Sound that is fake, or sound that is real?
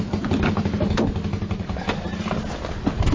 real